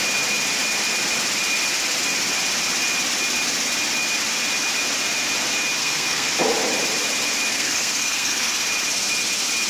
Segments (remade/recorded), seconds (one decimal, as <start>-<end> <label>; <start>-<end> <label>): 0.0-5.8 recorded; 5.8-6.3 remade; 6.3-7.5 recorded; 7.5-8.5 remade; 8.5-9.7 recorded